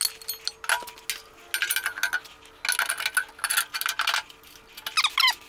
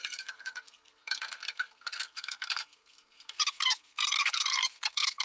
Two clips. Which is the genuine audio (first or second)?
first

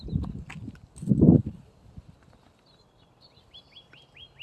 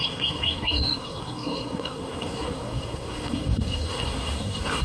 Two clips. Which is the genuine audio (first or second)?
first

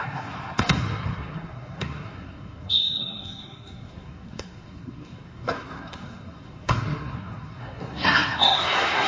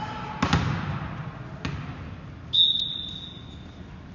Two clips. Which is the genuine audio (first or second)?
second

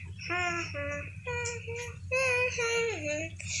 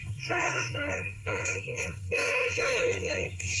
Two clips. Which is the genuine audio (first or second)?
first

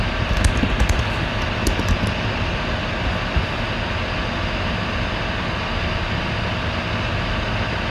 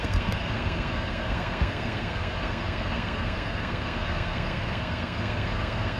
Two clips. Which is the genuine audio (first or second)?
first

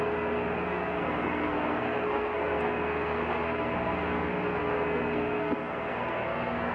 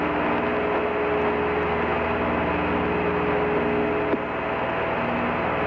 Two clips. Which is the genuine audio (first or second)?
second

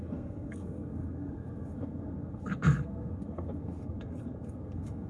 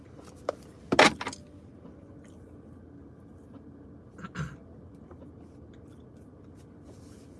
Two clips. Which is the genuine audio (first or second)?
second